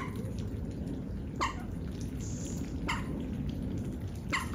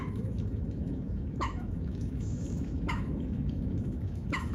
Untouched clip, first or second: first